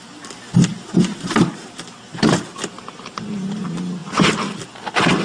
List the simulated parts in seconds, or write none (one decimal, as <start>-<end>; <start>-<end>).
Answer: 0.7-3.6